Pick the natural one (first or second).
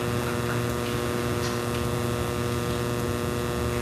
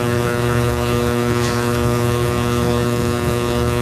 first